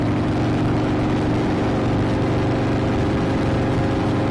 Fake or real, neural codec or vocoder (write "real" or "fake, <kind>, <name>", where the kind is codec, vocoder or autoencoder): real